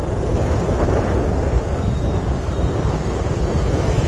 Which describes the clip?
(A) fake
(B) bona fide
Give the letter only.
B